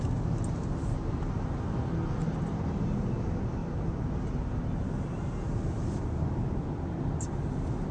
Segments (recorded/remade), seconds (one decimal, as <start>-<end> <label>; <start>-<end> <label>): 0.0-7.9 recorded